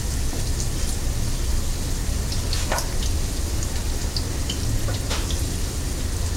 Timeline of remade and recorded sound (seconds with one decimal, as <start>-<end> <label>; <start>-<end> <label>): 0.0-6.4 recorded